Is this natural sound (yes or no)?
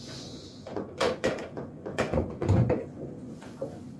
no